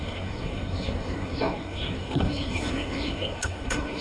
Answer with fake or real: fake